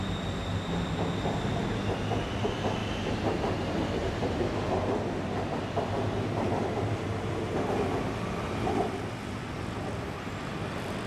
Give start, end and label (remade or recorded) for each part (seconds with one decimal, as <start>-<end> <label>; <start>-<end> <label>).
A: 0.0-4.0 recorded; 4.0-4.5 remade; 4.5-11.1 recorded